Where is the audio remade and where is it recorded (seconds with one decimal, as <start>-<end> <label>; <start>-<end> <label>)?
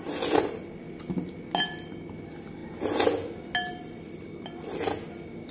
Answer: 0.0-5.5 recorded